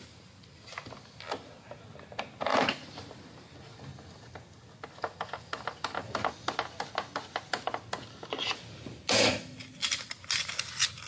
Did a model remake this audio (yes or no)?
no